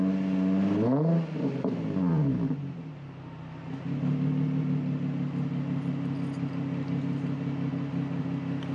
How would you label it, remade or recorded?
recorded